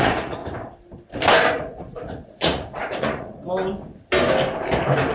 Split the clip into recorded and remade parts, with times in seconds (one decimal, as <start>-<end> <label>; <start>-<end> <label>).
0.0-0.4 remade; 0.4-1.5 recorded; 1.5-3.4 remade; 3.4-5.1 recorded